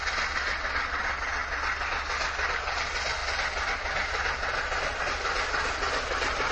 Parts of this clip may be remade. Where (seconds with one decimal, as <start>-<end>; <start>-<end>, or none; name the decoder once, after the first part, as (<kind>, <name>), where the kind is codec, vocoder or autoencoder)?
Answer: none